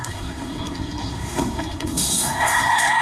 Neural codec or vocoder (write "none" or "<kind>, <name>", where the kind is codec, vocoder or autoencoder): codec, SNAC